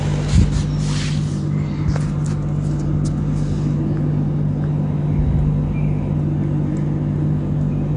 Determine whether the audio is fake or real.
real